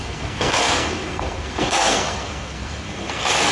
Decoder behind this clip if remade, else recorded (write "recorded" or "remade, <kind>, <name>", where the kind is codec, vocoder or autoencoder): remade, codec, SNAC